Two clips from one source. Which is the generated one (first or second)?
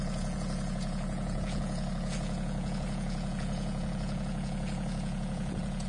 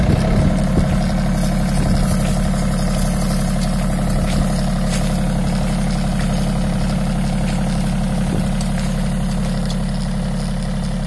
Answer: first